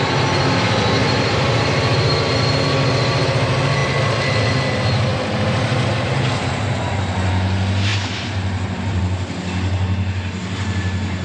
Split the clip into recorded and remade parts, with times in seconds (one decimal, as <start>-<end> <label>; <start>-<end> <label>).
0.0-1.0 recorded; 1.0-2.6 remade; 2.6-5.1 recorded; 5.1-6.6 remade; 6.6-7.9 recorded; 7.9-9.0 remade; 9.0-11.2 recorded